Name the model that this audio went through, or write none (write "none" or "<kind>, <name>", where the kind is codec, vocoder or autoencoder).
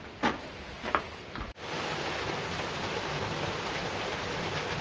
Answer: none